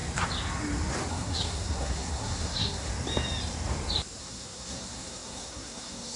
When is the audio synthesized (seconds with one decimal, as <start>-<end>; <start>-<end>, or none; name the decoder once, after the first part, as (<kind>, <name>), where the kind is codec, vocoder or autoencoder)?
1.1-2.9 (codec, SNAC); 4.2-6.2